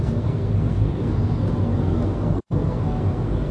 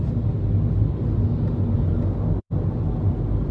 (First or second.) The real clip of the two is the second